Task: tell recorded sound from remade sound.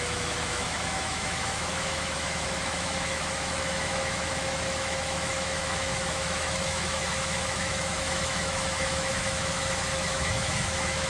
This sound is remade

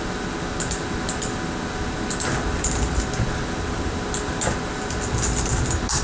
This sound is recorded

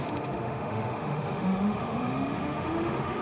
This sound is remade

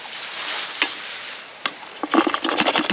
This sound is recorded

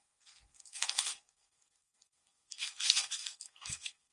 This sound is remade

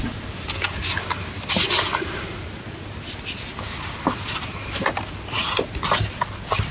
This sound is recorded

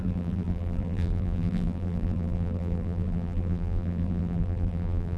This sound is remade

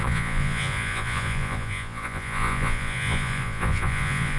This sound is remade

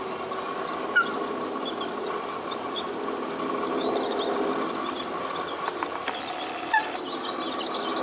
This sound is recorded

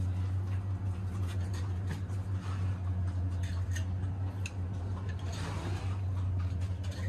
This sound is recorded